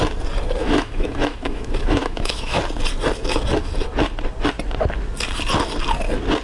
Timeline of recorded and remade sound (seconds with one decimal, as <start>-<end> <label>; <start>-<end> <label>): 0.0-0.6 recorded; 0.6-2.6 remade; 2.6-6.4 recorded